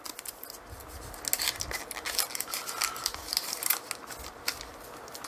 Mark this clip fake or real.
real